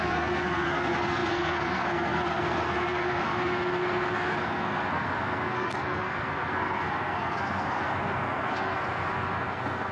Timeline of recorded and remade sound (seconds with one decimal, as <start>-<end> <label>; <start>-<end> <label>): 0.0-9.9 remade